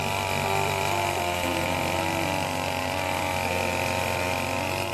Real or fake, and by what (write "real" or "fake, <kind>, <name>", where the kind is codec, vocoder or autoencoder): real